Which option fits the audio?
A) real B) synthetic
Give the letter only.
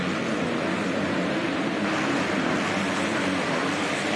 B